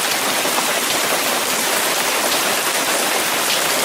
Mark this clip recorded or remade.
recorded